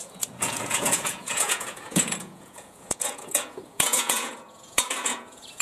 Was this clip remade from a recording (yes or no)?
yes